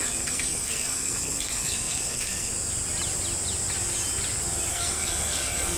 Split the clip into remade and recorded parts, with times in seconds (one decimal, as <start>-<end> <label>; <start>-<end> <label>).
0.0-2.5 remade; 2.5-4.7 recorded; 4.7-5.8 remade